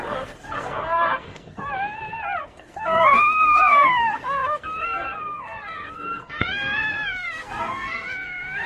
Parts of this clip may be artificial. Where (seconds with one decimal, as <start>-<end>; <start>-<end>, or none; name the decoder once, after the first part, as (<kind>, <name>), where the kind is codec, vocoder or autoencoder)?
0.0-1.7 (codec, SNAC); 2.4-8.7